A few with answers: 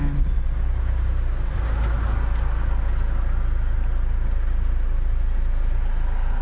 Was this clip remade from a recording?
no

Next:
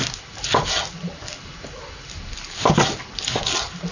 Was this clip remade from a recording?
no